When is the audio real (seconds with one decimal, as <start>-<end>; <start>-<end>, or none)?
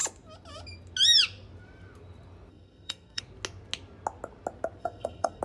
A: 0.0-2.5; 3.2-4.8